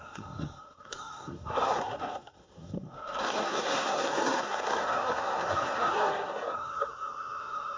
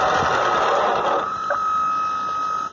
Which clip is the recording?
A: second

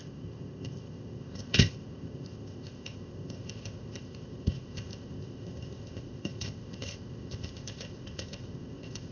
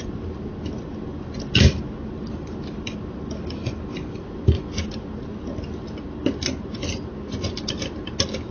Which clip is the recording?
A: second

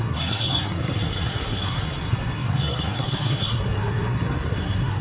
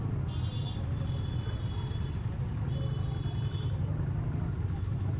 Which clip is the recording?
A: second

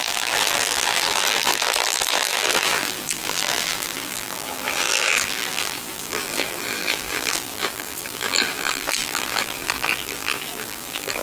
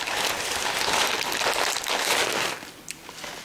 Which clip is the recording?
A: second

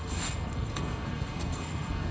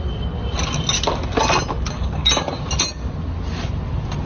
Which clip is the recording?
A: second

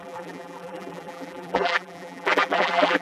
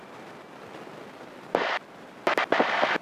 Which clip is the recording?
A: second